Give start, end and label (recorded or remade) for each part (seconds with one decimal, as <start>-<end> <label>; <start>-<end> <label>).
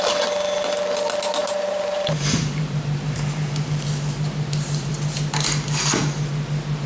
0.0-1.4 recorded; 1.4-4.9 remade; 4.9-6.9 recorded